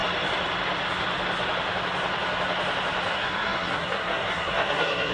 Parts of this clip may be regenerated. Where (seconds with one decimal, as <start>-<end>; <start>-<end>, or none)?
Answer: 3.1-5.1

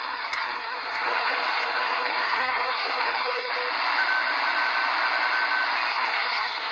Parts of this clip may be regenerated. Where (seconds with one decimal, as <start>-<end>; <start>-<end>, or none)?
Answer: 0.0-3.5; 5.9-6.7

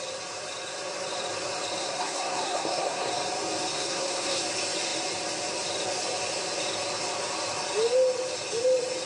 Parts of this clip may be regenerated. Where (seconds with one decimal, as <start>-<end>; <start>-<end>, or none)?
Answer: 1.8-3.1; 3.7-4.4

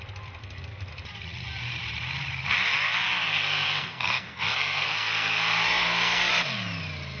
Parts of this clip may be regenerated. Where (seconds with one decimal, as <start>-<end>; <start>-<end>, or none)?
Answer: 0.4-0.9; 3.3-6.3

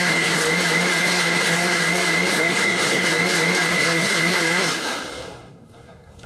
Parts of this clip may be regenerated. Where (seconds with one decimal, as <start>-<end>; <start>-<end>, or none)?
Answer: 0.0-0.4; 1.0-1.8; 2.3-3.1; 3.7-6.3